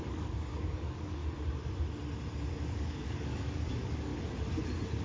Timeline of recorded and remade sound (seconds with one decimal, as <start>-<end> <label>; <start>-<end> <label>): 0.0-1.2 remade; 1.2-2.5 recorded; 2.5-4.1 remade; 4.1-5.0 recorded